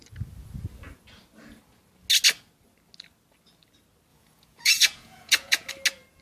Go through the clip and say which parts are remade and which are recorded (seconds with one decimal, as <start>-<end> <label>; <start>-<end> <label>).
0.0-4.1 recorded; 4.1-5.7 remade; 5.7-6.2 recorded